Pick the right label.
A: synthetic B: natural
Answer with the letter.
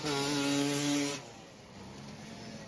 B